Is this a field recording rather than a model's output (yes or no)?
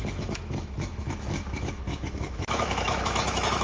no